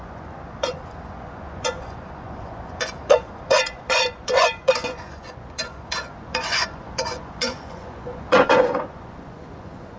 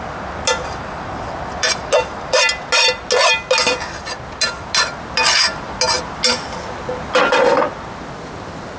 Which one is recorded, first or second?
second